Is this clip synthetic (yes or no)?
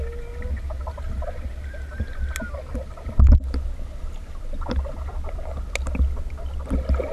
no